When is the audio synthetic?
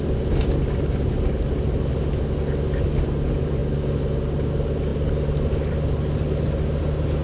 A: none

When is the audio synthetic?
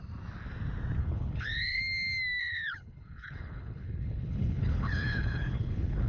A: 1.0-1.8 (codec, HILCodec); 2.4-6.1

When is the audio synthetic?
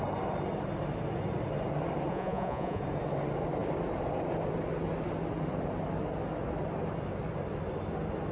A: 2.1-2.8 (vocoder, Vocos)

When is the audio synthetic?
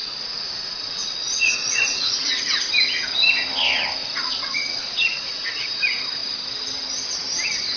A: 0.0-2.4 (vocoder, Vocos); 4.0-5.8